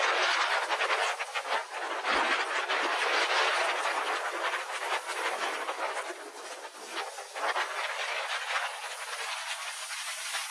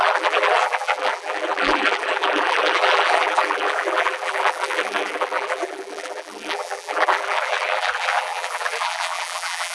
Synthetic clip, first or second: second